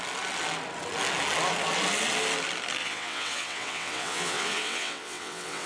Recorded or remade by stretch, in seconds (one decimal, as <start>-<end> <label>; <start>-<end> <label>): 0.0-2.8 recorded; 2.8-5.7 remade